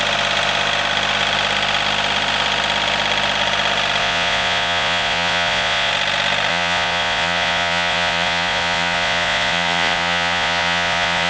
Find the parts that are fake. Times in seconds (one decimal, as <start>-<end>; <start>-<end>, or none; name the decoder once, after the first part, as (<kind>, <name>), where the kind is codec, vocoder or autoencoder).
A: 4.0-5.9 (vocoder, Vocos); 6.5-11.3